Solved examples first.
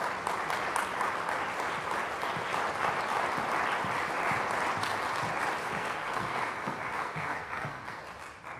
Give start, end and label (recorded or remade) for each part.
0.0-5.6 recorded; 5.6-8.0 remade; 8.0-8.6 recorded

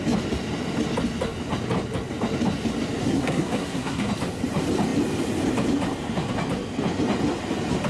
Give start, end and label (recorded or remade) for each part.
0.0-3.0 recorded; 3.0-4.1 remade; 4.1-7.9 recorded

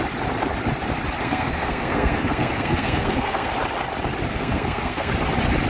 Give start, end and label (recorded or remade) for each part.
0.0-1.2 recorded; 1.2-3.5 remade; 3.5-4.3 recorded; 4.3-5.1 remade; 5.1-5.7 recorded

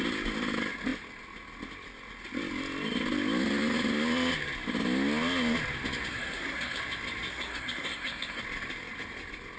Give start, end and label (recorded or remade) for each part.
0.0-6.1 recorded; 6.1-6.8 remade; 6.8-7.3 recorded; 7.3-8.4 remade; 8.4-9.6 recorded

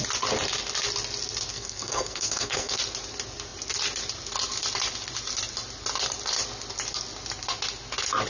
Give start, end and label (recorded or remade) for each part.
0.0-1.5 recorded; 1.5-2.8 remade; 2.8-8.3 recorded

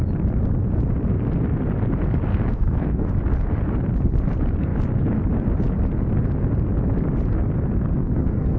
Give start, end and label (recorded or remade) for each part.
0.0-2.3 recorded; 2.3-3.1 remade; 3.1-8.0 recorded; 8.0-8.6 remade

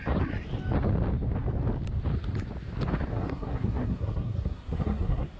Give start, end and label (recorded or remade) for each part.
0.0-3.1 recorded; 3.1-5.4 remade

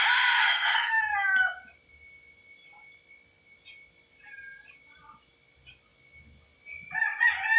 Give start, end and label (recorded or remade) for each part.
0.0-0.4 recorded; 0.4-1.0 remade; 1.0-7.6 recorded